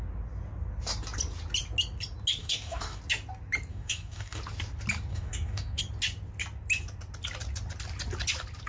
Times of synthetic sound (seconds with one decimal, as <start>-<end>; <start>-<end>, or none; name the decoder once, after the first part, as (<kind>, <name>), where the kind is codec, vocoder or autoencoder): 2.4-3.0 (codec, DAC); 3.7-4.4; 5.1-5.8